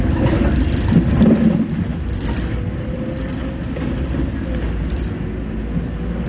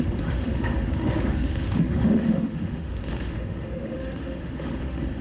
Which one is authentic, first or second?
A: first